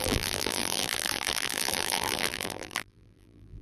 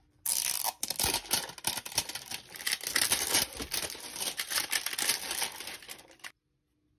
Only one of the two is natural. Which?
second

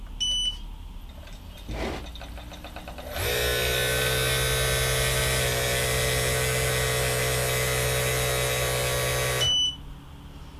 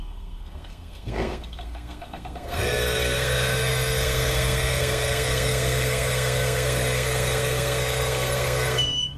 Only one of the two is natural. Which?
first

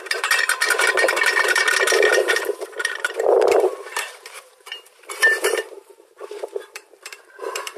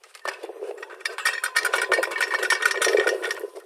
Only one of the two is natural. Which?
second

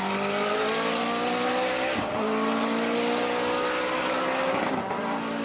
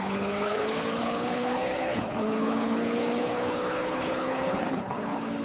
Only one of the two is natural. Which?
first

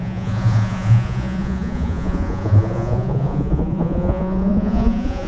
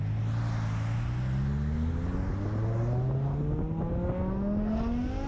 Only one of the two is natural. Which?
second